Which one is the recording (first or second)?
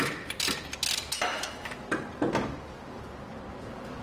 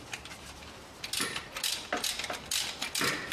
first